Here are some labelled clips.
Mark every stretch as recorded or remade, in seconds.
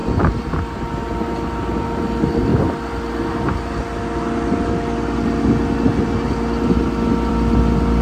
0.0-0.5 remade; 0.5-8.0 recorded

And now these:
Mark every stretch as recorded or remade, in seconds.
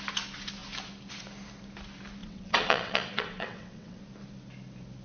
0.0-2.2 recorded; 2.2-4.0 remade; 4.0-5.0 recorded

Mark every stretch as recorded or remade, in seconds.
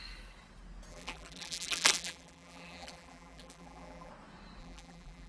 0.0-0.9 recorded; 0.9-4.1 remade; 4.1-4.6 recorded; 4.6-5.3 remade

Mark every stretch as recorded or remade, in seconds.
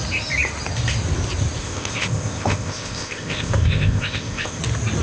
0.0-1.6 recorded; 1.6-4.6 remade; 4.6-5.0 recorded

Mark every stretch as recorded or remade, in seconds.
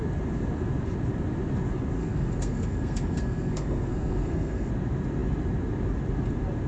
0.0-2.0 recorded; 2.0-4.7 remade; 4.7-6.7 recorded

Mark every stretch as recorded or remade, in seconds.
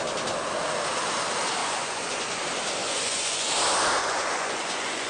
0.0-1.6 recorded; 1.6-2.4 remade; 2.4-2.8 recorded; 2.8-3.5 remade; 3.5-4.0 recorded; 4.0-5.1 remade